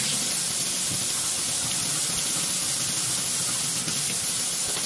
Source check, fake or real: real